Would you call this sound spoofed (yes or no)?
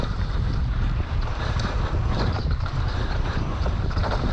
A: yes